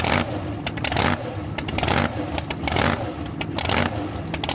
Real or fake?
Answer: real